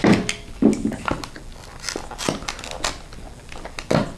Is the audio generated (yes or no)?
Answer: no